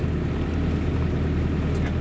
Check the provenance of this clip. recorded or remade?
recorded